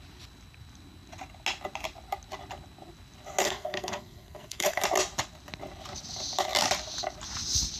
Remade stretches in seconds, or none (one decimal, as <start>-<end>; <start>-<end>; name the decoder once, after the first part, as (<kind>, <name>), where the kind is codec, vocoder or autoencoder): 3.4-4.8 (codec, SNAC)